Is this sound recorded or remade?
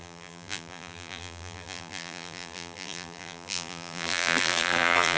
remade